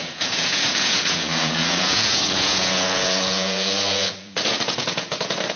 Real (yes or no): no